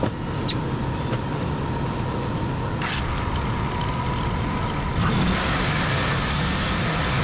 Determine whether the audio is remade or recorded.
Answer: recorded